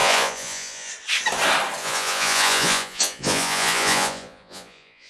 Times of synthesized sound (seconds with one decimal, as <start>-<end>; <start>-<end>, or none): 0.0-0.9; 1.8-5.1